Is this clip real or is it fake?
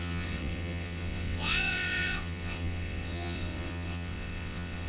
fake